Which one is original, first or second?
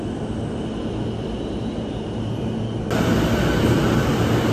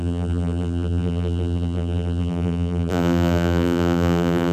first